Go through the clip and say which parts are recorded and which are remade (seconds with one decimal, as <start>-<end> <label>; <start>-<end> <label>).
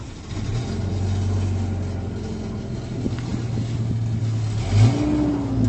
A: 0.0-5.7 recorded